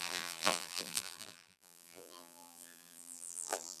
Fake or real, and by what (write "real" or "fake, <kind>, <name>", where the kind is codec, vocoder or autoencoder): fake, vocoder, BigVGAN v2